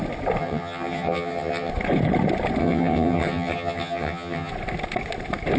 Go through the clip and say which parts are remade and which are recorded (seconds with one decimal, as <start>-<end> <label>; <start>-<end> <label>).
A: 0.0-0.4 recorded; 0.4-1.7 remade; 1.7-2.6 recorded; 2.6-4.5 remade; 4.5-5.6 recorded